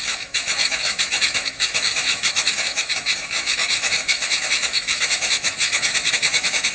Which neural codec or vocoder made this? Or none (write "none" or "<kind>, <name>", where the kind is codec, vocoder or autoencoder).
autoencoder, DAC-VAE